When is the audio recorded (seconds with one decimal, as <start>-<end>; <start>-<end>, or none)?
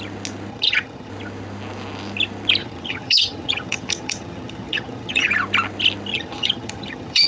0.0-0.5; 1.1-2.6; 5.3-6.1